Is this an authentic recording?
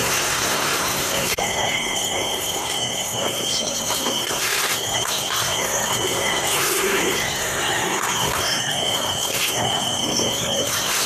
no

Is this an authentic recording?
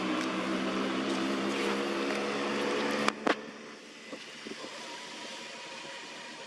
yes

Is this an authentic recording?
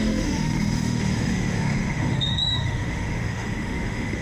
no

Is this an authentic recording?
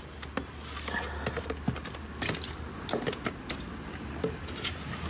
yes